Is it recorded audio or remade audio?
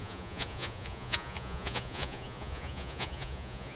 remade